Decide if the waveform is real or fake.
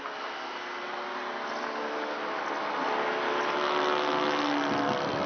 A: real